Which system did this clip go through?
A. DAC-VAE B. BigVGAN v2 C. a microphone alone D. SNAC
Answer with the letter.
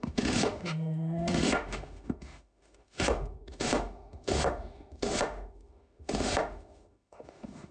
A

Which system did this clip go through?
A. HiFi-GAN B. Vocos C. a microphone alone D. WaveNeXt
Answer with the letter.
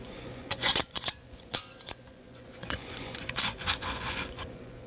B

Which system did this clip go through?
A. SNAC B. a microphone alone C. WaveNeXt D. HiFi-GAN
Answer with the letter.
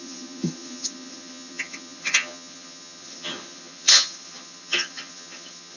D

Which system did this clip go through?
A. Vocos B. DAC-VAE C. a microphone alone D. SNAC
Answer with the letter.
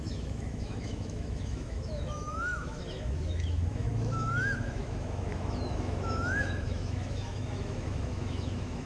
B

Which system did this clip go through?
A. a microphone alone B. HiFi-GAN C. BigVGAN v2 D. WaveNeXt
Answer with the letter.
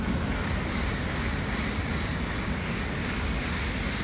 A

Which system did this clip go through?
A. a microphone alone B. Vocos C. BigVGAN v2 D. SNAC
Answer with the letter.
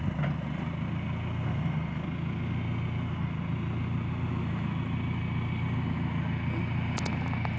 A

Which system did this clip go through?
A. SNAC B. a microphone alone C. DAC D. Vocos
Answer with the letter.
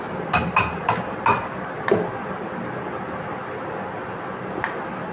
B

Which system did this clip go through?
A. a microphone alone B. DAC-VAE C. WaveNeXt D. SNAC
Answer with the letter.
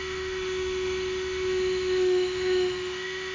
B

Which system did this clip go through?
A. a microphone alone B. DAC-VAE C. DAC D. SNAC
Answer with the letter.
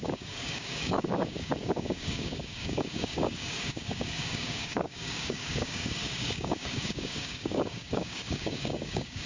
C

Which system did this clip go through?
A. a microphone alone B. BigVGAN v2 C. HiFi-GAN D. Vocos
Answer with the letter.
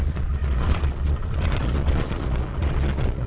D